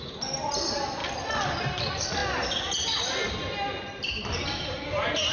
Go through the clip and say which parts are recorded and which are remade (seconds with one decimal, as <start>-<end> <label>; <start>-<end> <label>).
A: 0.0-5.3 recorded